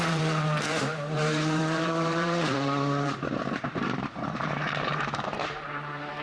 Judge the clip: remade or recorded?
remade